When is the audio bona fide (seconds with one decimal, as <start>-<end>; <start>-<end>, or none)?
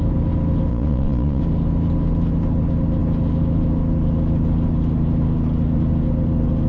0.0-0.7; 1.4-6.7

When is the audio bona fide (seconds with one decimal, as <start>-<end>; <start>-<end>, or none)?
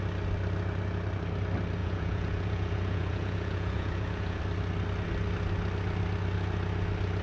0.0-1.8; 4.4-7.2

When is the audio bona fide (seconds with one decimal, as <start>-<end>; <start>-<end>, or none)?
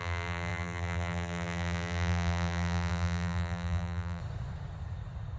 4.2-5.4